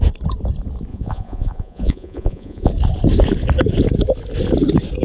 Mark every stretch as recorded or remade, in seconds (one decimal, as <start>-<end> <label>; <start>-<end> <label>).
0.0-0.9 recorded; 0.9-2.7 remade; 2.7-5.0 recorded